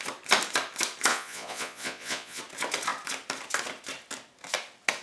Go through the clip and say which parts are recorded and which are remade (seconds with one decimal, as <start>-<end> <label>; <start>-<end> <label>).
0.0-1.1 recorded; 1.1-2.4 remade; 2.4-5.0 recorded